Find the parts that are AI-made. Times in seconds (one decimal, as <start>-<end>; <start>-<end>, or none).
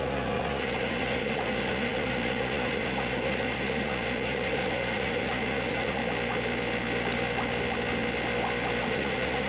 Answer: 0.0-6.0; 8.8-9.5